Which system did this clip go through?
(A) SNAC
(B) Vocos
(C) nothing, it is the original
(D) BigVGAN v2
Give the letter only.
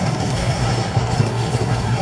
A